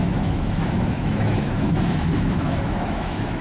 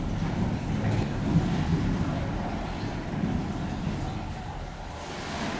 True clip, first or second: second